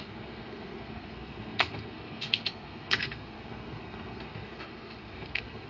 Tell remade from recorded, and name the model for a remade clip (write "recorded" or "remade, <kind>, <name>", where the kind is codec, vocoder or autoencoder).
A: remade, codec, SNAC